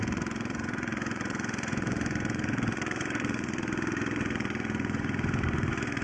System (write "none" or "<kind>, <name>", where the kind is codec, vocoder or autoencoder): vocoder, Vocos